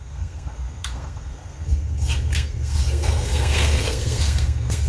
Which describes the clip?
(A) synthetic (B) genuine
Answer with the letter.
A